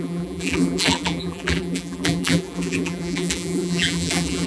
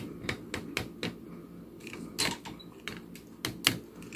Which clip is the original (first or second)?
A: second